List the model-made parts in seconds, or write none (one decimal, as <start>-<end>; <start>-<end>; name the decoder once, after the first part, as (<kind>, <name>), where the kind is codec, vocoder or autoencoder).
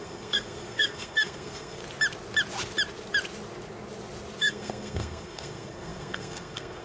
0.0-1.8 (codec, SNAC); 4.4-6.8